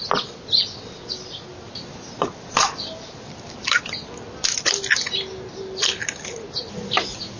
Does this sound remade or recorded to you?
recorded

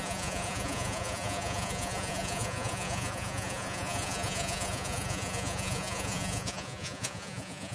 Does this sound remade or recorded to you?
remade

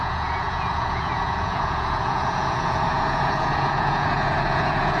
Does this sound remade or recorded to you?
remade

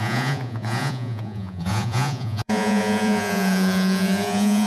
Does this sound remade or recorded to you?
remade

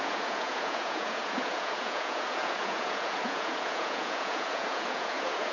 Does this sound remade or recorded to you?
remade